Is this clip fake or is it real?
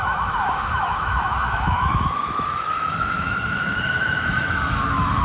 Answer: fake